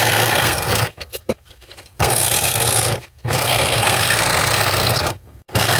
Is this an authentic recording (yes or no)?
no